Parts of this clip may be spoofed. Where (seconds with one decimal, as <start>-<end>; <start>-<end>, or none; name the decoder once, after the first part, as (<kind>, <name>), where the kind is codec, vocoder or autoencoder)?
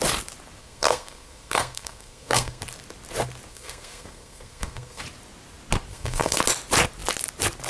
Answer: 0.6-2.6 (codec, SNAC); 3.5-5.0; 5.9-6.4